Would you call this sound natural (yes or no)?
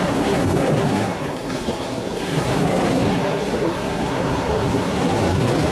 no